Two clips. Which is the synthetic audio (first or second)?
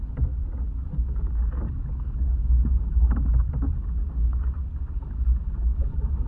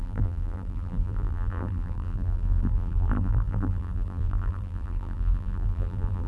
second